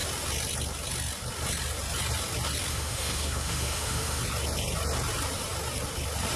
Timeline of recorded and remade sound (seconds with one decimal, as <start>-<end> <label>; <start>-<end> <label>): 0.0-2.7 recorded; 2.7-4.2 remade; 4.2-6.4 recorded